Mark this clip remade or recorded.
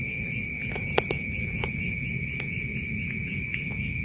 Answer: recorded